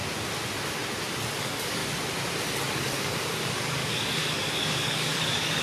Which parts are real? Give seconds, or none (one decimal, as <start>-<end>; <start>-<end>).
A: 0.0-1.4; 1.8-2.7